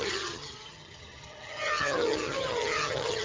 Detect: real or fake fake